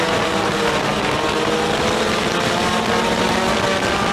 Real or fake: real